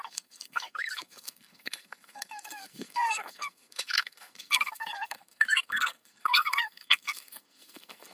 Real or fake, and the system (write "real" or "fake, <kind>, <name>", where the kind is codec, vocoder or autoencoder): fake, codec, SNAC